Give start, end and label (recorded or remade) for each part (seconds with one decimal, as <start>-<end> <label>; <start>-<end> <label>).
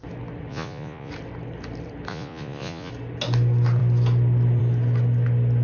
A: 0.0-0.5 recorded; 0.5-1.1 remade; 1.1-2.1 recorded; 2.1-2.9 remade; 2.9-5.6 recorded